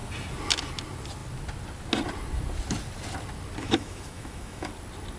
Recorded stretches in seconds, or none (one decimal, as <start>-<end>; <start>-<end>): 0.0-3.6; 4.7-5.2